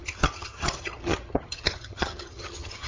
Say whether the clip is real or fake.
fake